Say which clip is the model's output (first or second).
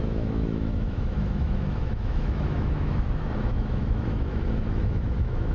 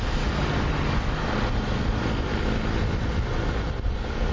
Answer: first